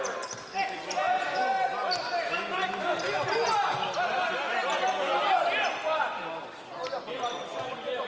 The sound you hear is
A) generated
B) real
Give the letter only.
B